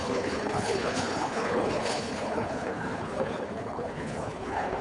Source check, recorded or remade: remade